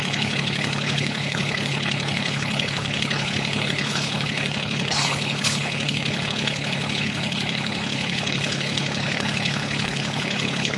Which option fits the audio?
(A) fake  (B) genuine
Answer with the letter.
A